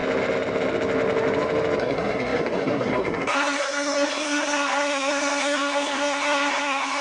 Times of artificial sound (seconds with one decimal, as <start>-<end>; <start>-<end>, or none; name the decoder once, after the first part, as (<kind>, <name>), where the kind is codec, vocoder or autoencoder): 1.8-7.0 (codec, SNAC)